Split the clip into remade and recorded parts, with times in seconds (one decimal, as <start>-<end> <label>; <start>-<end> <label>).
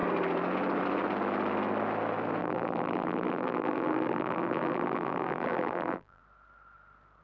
0.0-2.4 recorded; 2.4-6.2 remade; 6.2-7.2 recorded